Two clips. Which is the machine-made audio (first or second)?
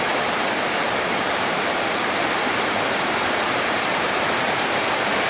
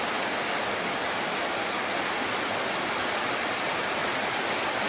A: first